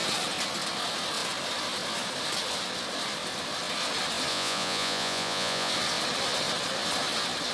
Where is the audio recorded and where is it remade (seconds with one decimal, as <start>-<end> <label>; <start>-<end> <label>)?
0.0-4.3 recorded; 4.3-5.7 remade; 5.7-7.5 recorded